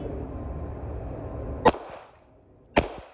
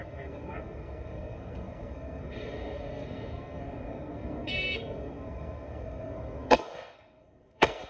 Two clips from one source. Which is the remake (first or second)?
second